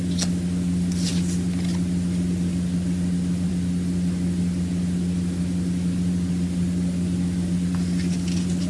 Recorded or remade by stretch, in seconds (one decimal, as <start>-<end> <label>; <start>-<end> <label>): 0.0-8.7 recorded